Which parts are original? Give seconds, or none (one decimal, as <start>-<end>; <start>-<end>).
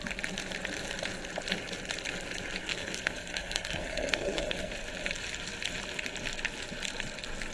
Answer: 0.0-2.6; 4.7-7.5